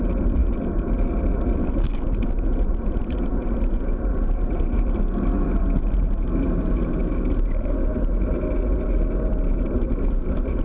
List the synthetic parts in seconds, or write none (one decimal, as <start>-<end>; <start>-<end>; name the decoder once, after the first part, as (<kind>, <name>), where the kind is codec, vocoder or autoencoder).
none